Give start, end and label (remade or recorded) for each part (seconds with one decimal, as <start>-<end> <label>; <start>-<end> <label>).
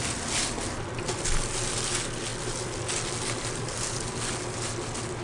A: 0.0-5.2 recorded